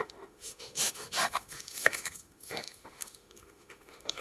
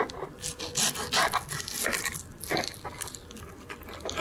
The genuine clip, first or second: second